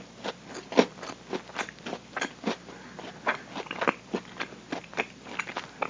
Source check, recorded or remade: recorded